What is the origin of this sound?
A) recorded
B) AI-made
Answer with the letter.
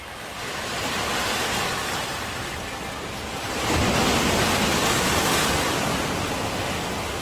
A